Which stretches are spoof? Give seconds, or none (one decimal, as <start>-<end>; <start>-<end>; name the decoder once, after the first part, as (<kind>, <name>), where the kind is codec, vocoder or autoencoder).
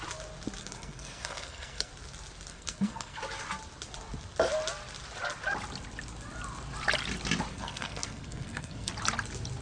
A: 0.6-1.9 (codec, SNAC); 2.5-3.2; 7.5-8.9